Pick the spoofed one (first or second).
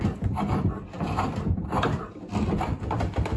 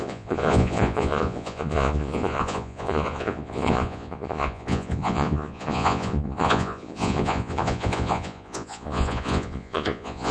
second